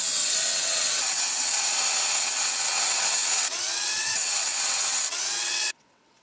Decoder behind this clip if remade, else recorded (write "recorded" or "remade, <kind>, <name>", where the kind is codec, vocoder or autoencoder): remade, vocoder, WaveNeXt